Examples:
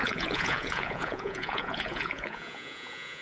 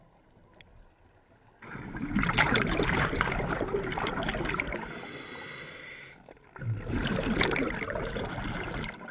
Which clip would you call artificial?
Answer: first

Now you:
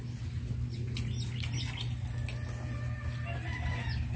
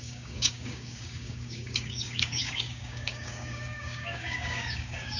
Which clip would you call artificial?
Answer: second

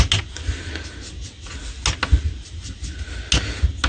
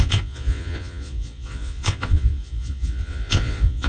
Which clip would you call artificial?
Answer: second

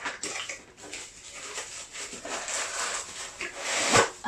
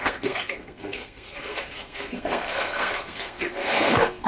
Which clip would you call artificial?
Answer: second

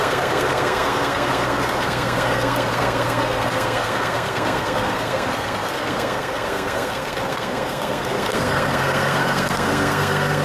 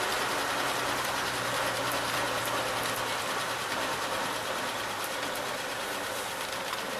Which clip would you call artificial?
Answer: first